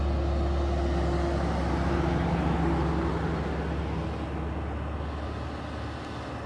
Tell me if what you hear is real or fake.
real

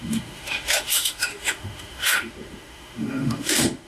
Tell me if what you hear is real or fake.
fake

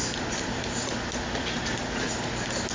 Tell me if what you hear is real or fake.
real